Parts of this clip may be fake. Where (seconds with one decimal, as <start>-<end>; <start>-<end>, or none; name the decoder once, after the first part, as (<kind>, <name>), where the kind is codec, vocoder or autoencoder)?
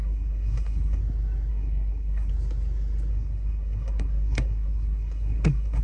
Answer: 0.0-1.0 (codec, SNAC); 1.5-2.3; 3.1-5.8